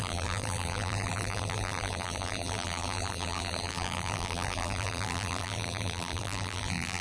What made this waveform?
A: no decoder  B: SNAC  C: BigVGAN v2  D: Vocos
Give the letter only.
C